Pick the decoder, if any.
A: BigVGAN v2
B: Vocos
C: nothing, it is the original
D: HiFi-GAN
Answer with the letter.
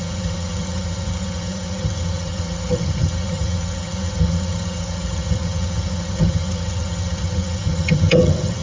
D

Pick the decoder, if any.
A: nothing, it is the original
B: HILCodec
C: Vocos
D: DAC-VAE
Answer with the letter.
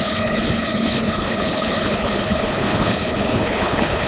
B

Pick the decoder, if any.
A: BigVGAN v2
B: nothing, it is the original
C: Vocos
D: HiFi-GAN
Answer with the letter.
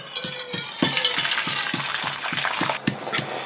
B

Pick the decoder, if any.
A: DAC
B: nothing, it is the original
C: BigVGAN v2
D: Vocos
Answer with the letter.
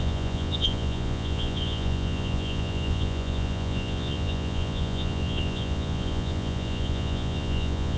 D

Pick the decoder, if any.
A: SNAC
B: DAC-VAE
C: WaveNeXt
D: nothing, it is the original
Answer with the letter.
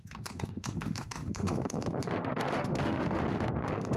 B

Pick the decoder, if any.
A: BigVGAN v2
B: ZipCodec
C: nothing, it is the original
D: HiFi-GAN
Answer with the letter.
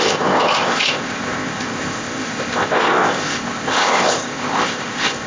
B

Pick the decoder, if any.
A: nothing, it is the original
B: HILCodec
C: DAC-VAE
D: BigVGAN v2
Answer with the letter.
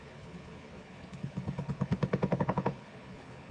B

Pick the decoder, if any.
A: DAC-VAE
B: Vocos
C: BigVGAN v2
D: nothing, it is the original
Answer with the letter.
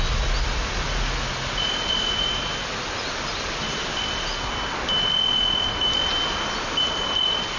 D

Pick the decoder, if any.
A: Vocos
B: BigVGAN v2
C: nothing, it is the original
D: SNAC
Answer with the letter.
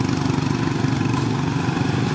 C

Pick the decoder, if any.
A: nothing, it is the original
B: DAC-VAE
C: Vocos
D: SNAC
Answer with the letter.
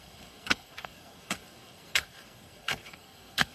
D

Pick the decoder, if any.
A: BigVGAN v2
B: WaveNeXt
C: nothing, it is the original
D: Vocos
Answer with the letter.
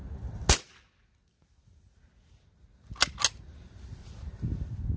C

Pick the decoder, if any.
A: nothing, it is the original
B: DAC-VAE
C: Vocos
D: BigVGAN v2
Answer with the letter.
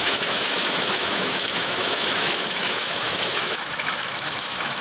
B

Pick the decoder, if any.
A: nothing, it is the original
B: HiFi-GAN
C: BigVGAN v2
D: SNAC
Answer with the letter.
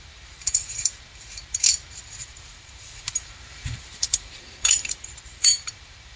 C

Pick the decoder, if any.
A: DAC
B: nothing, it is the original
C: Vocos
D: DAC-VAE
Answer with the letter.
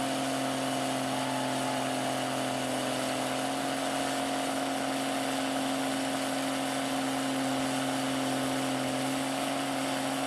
B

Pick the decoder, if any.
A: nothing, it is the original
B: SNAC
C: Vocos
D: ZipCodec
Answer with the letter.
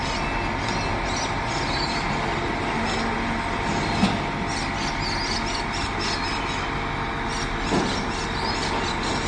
A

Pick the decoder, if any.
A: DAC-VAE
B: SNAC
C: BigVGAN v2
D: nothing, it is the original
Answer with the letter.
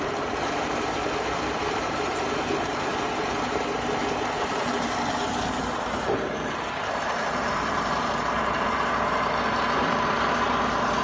C